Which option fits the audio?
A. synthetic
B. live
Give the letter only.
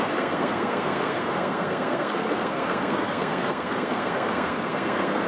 A